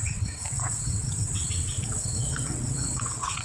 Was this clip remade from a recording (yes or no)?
yes